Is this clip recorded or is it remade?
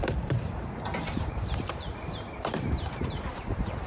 remade